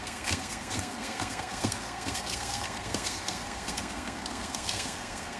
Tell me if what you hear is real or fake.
fake